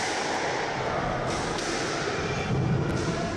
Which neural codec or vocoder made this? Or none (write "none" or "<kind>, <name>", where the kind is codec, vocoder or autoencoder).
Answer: none